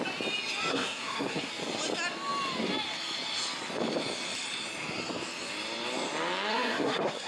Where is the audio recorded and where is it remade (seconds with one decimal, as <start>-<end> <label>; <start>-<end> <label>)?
0.0-0.7 recorded; 0.7-1.5 remade; 1.5-6.5 recorded; 6.5-7.3 remade